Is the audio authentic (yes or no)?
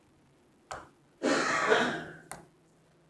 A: yes